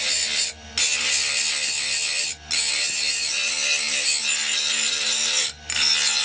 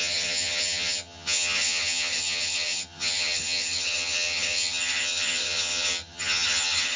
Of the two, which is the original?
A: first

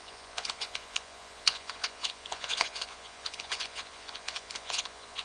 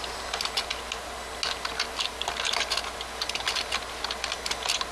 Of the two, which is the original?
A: second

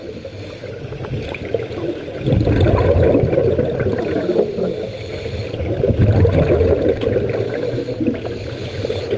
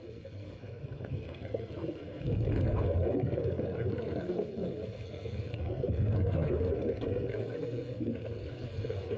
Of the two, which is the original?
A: first